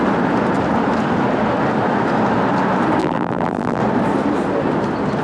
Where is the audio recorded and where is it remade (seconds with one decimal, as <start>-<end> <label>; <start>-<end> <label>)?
0.0-3.0 recorded; 3.0-3.8 remade; 3.8-5.2 recorded